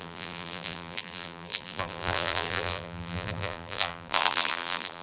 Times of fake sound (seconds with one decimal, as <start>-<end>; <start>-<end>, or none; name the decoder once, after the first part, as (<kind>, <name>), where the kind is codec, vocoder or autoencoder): 0.0-5.0 (vocoder, BigVGAN v2)